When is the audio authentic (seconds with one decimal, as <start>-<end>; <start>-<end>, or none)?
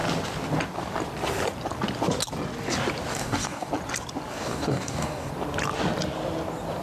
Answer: 0.0-3.1; 3.7-4.3; 5.3-6.8